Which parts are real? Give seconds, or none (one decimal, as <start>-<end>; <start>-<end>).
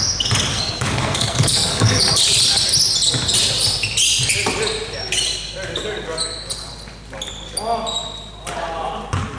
0.0-0.5; 2.0-9.4